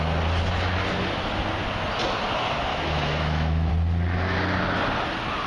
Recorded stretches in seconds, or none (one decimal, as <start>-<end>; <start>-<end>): 0.0-2.7; 3.7-5.5